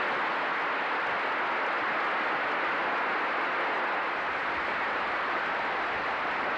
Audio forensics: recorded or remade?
recorded